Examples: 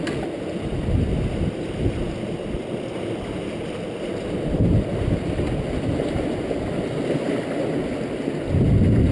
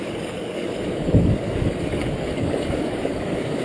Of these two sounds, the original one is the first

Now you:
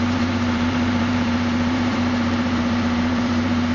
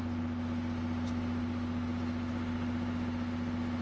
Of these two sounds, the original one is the second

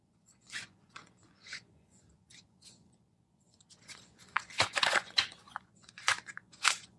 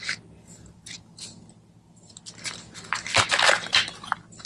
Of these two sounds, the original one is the second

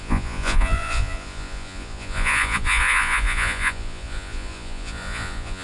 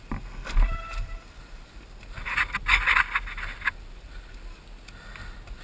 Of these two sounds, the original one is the second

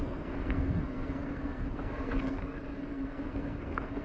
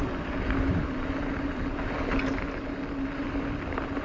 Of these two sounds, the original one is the second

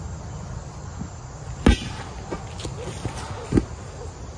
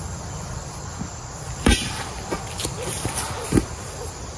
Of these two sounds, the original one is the first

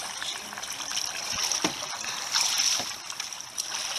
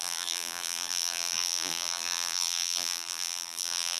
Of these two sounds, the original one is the first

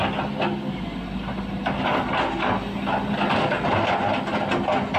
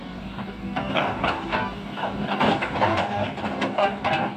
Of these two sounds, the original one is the first